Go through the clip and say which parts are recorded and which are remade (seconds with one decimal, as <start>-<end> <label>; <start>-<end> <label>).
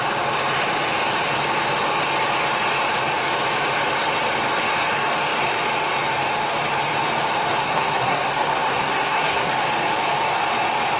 0.0-7.6 recorded; 7.6-9.5 remade; 9.5-11.0 recorded